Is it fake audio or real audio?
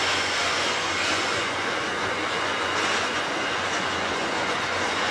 fake